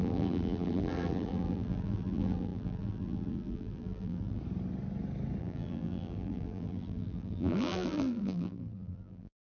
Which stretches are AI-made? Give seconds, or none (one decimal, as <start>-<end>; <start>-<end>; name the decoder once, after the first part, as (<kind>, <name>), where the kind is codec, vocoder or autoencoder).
0.0-4.4 (vocoder, BigVGAN v2); 5.4-9.5